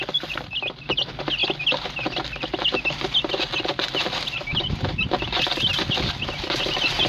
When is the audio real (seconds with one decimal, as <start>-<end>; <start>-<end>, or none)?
0.0-7.1